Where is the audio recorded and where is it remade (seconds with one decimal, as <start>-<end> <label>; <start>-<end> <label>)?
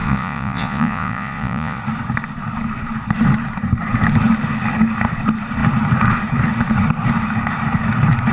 0.0-1.8 remade; 1.8-8.3 recorded